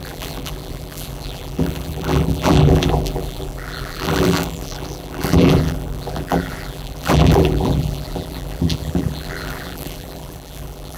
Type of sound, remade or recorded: remade